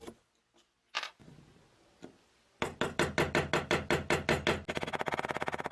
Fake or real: real